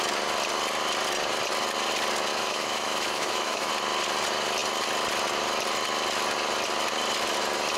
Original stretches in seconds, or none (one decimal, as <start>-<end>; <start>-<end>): 0.0-2.3; 3.7-7.8